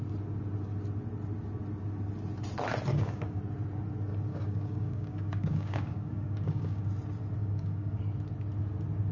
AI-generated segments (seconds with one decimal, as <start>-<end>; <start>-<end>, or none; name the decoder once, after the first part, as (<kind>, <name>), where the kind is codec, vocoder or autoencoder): 2.9-3.4 (codec, DAC); 4.3-6.9; 7.4-8.0